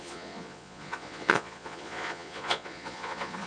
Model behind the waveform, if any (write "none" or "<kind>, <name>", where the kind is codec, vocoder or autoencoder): vocoder, Vocos